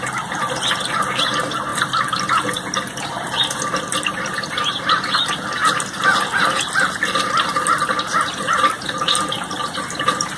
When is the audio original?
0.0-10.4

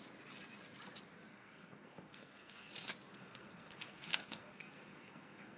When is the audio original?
0.0-1.3; 2.7-3.1

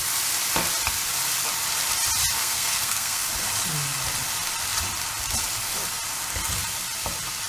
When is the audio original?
0.0-2.4; 3.3-7.5